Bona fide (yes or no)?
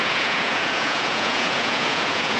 no